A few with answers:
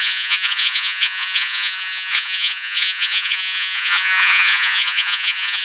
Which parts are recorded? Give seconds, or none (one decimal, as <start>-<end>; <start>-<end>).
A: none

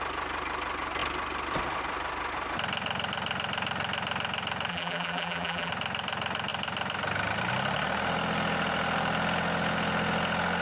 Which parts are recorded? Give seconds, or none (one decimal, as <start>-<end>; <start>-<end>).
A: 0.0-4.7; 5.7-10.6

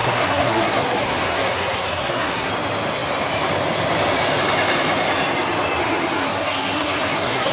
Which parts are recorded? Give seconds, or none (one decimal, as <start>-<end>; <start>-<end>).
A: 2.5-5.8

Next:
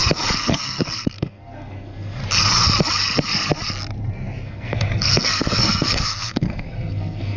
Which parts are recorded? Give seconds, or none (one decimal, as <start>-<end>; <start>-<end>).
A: 0.0-0.5; 2.2-4.4

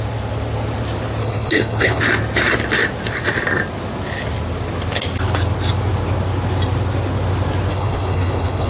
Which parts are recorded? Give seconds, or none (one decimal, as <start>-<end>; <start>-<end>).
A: 0.0-1.2; 2.0-7.7

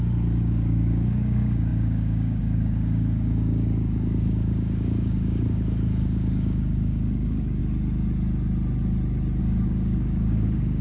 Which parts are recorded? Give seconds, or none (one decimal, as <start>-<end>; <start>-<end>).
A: 7.6-9.4